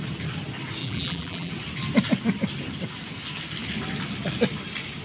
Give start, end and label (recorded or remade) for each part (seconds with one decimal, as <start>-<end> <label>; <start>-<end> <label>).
0.0-0.8 recorded; 0.8-1.5 remade; 1.5-5.0 recorded